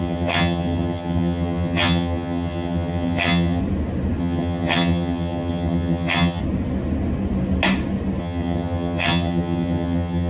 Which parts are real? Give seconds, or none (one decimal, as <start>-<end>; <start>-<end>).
3.6-4.2; 6.4-8.2